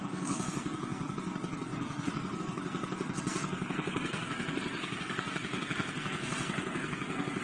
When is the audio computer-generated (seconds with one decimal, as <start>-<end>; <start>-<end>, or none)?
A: 0.0-7.4